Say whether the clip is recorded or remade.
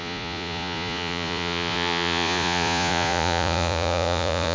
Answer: remade